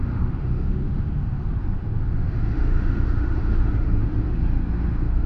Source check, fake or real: fake